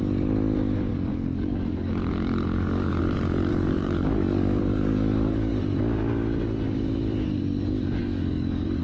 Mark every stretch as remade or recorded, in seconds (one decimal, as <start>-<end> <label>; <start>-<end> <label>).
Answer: 0.0-0.9 recorded; 0.9-3.0 remade; 3.0-3.5 recorded; 3.5-5.6 remade; 5.6-8.0 recorded; 8.0-8.8 remade